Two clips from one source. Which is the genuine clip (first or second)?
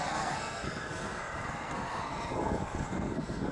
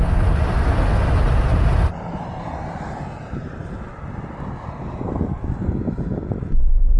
second